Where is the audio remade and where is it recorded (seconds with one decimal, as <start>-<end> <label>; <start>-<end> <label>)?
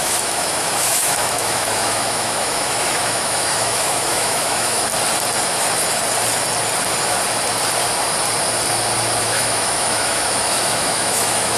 0.0-4.9 remade; 4.9-9.2 recorded; 9.2-11.6 remade